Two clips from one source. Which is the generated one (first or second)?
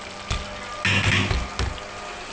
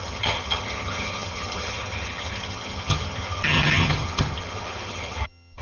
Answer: second